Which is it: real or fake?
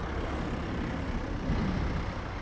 real